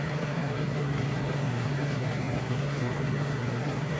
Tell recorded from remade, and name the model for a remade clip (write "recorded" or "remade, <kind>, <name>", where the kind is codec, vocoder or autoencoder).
remade, codec, SNAC